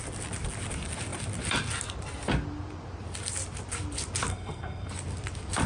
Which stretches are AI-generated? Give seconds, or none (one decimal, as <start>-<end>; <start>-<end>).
4.3-4.9